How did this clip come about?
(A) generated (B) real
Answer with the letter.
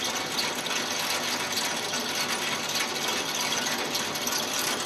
B